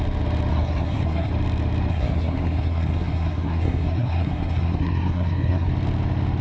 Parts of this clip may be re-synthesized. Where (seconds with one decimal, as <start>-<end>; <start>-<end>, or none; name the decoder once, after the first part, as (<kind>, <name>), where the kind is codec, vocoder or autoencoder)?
0.5-1.3 (codec, SNAC); 1.9-5.7